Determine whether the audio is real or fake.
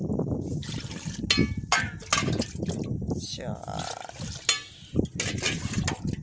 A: real